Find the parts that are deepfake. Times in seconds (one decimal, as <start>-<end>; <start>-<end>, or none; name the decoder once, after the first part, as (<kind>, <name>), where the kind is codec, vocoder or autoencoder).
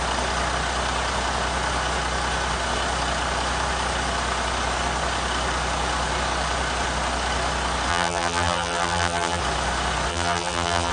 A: 7.9-9.4 (vocoder, BigVGAN v2); 10.1-10.9